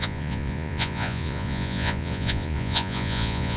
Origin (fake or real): fake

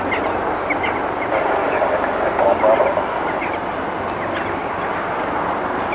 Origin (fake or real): real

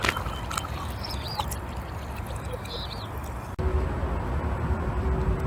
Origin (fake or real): real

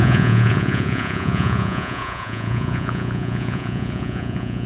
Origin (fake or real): fake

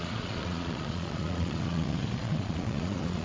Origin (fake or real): fake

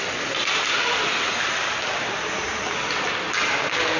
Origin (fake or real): real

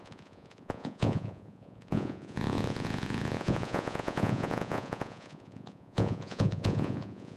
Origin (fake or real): fake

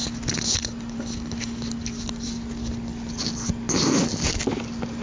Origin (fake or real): real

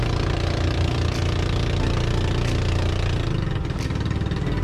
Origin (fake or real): real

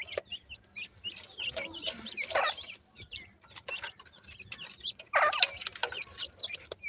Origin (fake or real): real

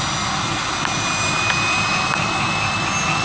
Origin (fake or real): real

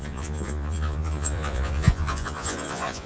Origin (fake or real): fake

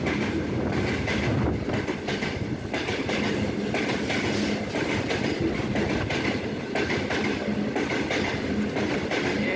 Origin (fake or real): real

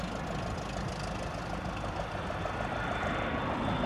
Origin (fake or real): real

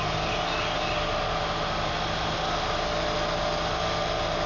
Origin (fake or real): real